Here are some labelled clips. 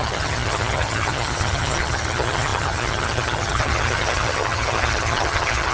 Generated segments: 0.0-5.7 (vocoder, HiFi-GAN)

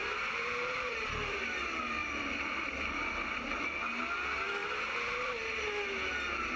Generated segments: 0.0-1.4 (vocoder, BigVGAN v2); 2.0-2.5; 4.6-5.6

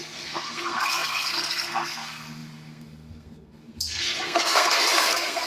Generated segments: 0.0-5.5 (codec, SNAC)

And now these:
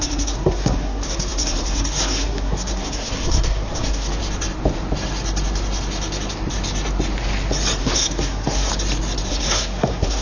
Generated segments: 0.0-4.2 (codec, SNAC); 7.8-8.7; 9.3-10.2

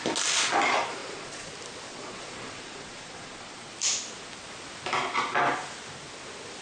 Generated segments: 1.0-1.5 (vocoder, Vocos); 1.9-3.7

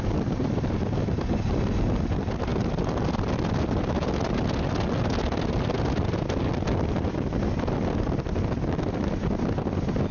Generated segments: none